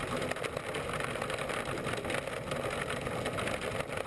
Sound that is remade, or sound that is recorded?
recorded